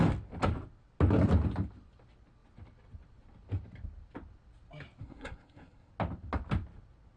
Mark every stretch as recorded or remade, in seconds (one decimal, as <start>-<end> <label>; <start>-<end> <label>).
0.0-5.0 recorded; 5.0-5.9 remade; 5.9-7.2 recorded